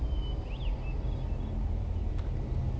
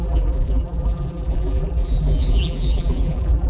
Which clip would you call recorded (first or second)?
first